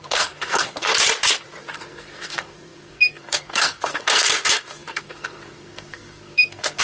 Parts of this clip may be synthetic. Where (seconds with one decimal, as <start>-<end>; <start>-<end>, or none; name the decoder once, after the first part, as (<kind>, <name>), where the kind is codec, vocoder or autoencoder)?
0.0-0.9 (codec, SNAC); 1.7-6.8